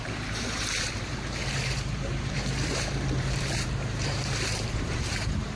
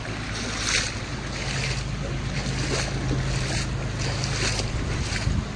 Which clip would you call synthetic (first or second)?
first